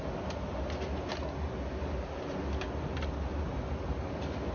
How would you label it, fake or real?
real